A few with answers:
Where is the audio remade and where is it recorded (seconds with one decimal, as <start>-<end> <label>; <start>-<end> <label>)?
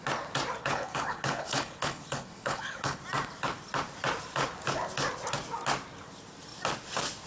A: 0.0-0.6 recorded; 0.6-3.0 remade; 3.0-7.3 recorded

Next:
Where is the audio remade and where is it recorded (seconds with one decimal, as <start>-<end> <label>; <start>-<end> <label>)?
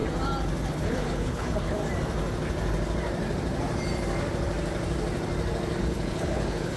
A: 0.0-0.7 recorded; 0.7-1.8 remade; 1.8-5.8 recorded; 5.8-6.8 remade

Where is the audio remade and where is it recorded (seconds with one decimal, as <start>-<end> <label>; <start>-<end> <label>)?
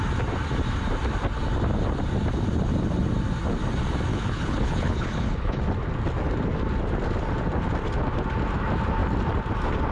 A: 0.0-4.1 recorded; 4.1-5.6 remade; 5.6-9.9 recorded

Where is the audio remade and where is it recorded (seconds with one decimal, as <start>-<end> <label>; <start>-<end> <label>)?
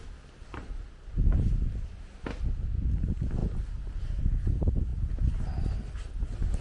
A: 0.0-6.6 recorded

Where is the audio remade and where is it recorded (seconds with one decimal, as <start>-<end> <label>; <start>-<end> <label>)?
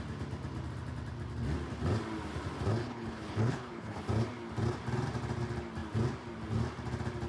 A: 0.0-2.8 recorded; 2.8-4.0 remade; 4.0-7.3 recorded